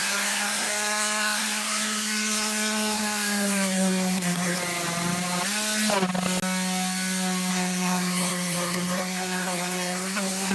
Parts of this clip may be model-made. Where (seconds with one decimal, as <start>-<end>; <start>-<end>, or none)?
0.0-4.6; 7.5-10.5